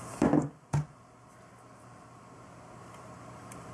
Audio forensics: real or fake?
fake